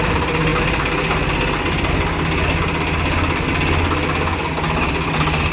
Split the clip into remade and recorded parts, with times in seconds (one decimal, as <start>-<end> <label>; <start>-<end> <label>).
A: 0.0-5.5 recorded